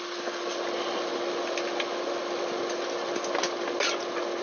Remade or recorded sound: recorded